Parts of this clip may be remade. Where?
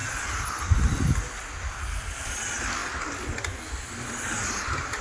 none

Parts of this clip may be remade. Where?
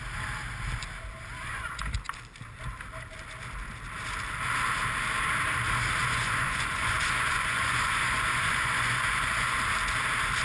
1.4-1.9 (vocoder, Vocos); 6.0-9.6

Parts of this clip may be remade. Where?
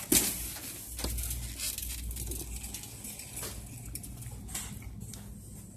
none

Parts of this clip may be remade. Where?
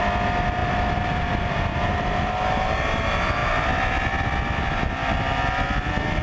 0.6-2.3 (vocoder, BigVGAN v2)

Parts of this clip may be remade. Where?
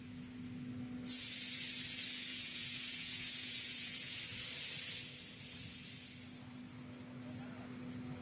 2.3-4.2 (vocoder, Vocos)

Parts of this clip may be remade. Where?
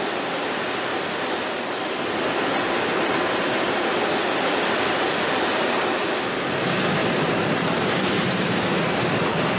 0.0-0.9 (vocoder, BigVGAN v2); 4.1-9.6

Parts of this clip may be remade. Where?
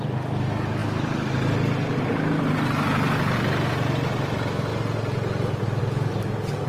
none